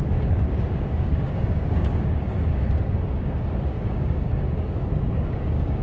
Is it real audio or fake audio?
fake